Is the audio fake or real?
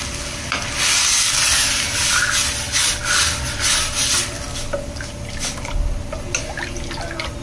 real